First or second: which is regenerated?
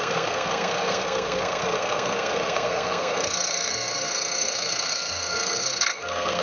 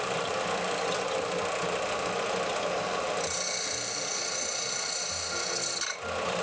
first